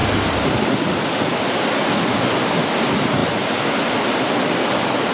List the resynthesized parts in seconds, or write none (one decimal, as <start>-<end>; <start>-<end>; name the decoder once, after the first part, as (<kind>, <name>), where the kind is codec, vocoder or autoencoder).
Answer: none